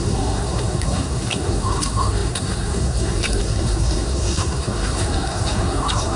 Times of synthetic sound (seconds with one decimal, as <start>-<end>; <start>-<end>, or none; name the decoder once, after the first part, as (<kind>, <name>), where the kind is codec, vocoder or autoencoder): 0.0-6.2 (codec, SNAC)